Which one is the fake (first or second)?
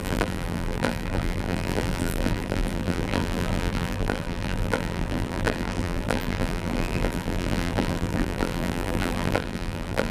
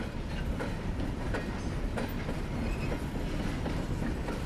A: first